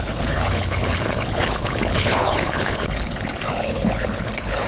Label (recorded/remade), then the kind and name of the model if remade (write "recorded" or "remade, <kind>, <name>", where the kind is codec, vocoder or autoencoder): remade, codec, HILCodec